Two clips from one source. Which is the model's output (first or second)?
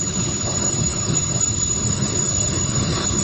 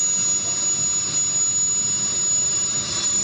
first